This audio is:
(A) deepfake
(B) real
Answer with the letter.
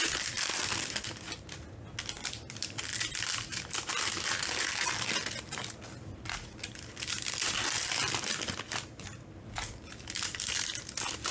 B